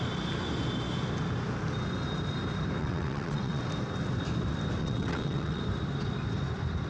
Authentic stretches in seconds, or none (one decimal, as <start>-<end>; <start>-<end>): 0.0-2.8; 3.6-4.8; 5.6-6.9

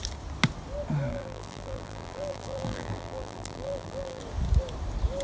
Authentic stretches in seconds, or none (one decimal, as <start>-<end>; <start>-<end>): 0.0-1.1; 4.2-5.2

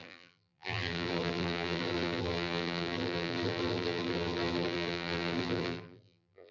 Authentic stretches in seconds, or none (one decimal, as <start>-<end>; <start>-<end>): none

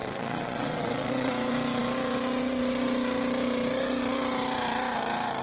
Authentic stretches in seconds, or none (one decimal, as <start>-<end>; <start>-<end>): 1.3-5.4

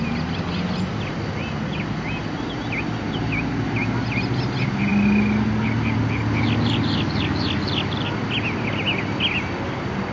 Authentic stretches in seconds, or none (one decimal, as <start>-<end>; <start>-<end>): 0.0-10.1